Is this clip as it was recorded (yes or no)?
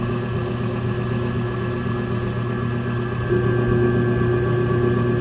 yes